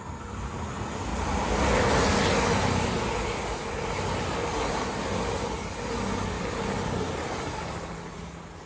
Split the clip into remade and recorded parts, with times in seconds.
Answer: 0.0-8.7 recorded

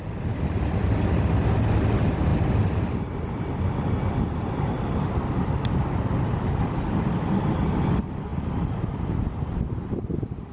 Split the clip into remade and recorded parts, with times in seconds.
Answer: 0.0-10.5 recorded

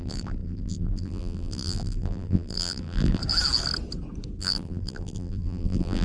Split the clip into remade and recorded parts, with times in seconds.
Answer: 0.0-3.2 remade; 3.2-4.4 recorded; 4.4-6.0 remade

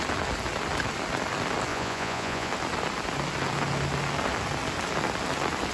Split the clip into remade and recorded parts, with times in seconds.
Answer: 0.0-1.7 recorded; 1.7-2.5 remade; 2.5-5.7 recorded

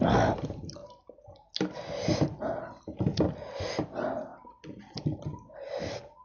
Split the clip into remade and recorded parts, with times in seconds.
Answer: 0.0-6.2 recorded

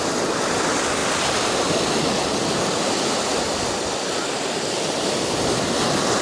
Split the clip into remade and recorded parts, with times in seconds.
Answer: 0.0-6.2 recorded

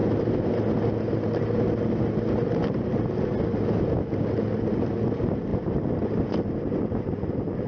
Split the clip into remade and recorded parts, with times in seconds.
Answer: 0.0-7.7 recorded

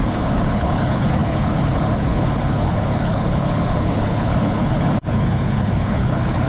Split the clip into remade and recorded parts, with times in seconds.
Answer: 0.0-6.5 remade